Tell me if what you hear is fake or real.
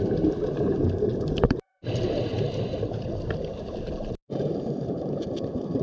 fake